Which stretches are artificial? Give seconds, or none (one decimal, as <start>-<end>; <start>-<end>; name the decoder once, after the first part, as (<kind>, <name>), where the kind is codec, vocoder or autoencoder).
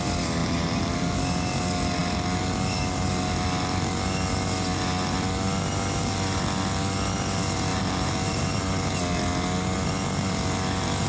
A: 0.4-1.2 (vocoder, BigVGAN v2); 7.7-8.6